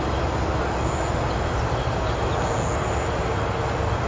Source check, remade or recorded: recorded